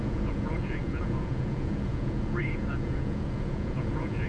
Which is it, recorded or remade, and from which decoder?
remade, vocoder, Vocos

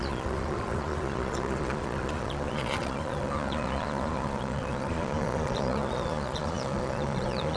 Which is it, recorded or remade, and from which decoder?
remade, vocoder, Vocos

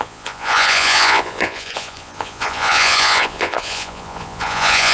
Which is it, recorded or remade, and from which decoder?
remade, vocoder, Vocos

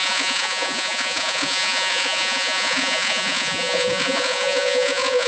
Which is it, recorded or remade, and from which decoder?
remade, vocoder, Vocos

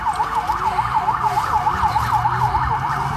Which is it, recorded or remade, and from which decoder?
recorded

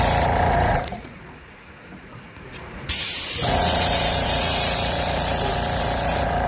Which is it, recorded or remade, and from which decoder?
remade, vocoder, Vocos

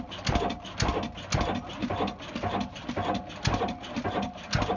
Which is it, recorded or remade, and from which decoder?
recorded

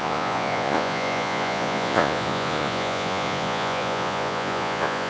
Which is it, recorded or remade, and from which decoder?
remade, vocoder, Vocos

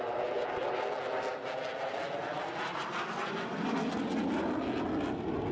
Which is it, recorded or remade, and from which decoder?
recorded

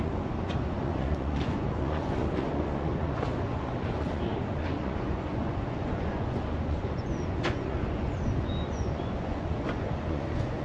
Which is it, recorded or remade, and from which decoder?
remade, vocoder, Vocos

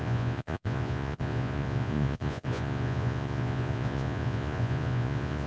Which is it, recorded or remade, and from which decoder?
remade, vocoder, Vocos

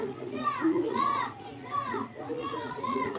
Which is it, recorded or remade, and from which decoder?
remade, vocoder, Vocos